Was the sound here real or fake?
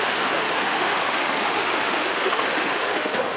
fake